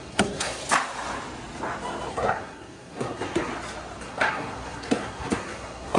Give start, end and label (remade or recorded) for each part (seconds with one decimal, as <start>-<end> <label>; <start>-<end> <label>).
0.0-0.6 remade; 0.6-2.1 recorded; 2.1-3.5 remade; 3.5-4.0 recorded; 4.0-6.0 remade